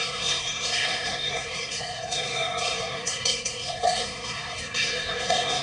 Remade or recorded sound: remade